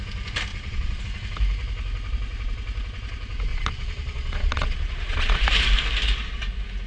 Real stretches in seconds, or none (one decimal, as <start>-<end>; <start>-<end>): 0.0-0.5; 1.0-3.5; 5.4-6.9